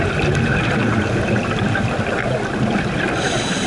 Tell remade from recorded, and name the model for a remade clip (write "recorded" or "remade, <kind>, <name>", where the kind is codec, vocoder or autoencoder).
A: recorded